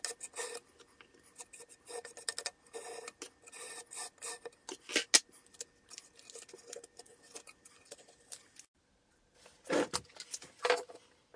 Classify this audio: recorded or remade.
recorded